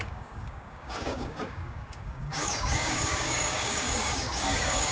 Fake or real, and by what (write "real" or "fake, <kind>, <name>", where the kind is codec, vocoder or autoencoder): fake, codec, DAC